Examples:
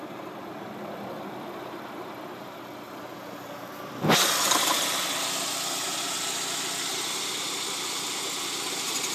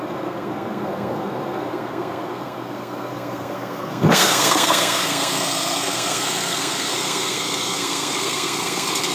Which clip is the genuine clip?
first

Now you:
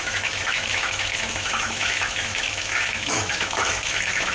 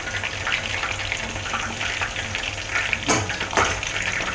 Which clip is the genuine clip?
second